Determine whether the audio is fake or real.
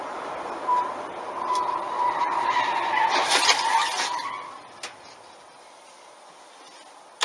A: real